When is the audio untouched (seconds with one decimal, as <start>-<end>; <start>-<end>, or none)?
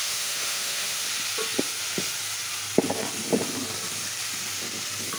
1.0-5.2